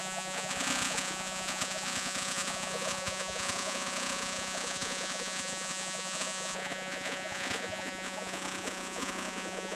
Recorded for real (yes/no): no